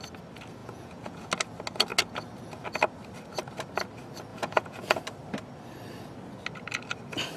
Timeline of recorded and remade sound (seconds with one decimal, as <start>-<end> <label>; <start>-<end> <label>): 0.0-0.6 recorded; 0.6-1.3 remade; 1.3-4.3 recorded; 4.3-5.0 remade; 5.0-7.4 recorded